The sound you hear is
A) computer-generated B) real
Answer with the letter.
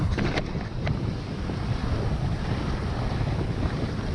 A